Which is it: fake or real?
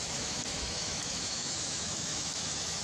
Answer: fake